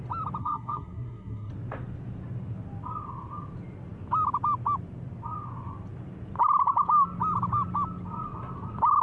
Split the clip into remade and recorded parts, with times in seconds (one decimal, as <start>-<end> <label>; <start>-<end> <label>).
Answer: 0.0-0.4 recorded; 0.4-1.5 remade; 1.5-9.0 recorded